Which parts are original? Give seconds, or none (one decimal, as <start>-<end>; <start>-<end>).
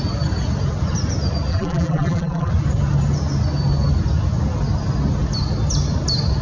0.0-1.5; 2.5-6.4